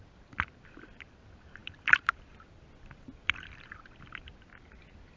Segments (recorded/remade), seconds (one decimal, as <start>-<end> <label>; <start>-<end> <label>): 0.0-1.6 recorded; 1.6-3.8 remade; 3.8-5.2 recorded